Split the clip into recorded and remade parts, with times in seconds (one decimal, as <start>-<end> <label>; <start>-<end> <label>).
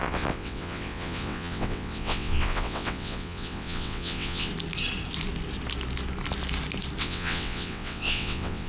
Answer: 0.0-4.5 remade; 4.5-7.0 recorded; 7.0-8.7 remade